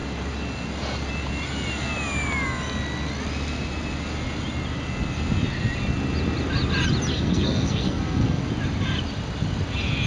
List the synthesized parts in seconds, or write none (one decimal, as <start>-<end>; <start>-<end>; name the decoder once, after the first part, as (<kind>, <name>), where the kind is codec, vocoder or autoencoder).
7.1-8.5 (codec, SNAC)